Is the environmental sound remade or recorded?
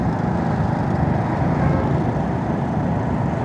recorded